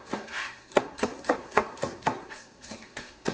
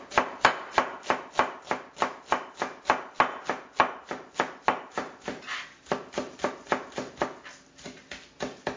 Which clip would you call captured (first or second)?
second